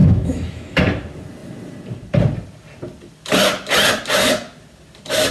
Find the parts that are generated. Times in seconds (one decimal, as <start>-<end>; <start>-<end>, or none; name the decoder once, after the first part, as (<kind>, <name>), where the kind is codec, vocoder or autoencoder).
0.0-0.8 (autoencoder, DAC-VAE)